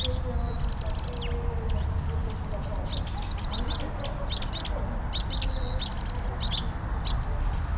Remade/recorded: recorded